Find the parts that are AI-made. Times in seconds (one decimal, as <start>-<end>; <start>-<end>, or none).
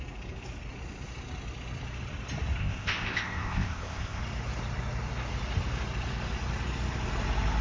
2.6-4.2